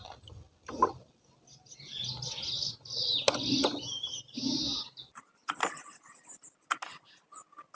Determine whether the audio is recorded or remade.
recorded